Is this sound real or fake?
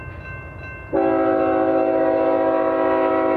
real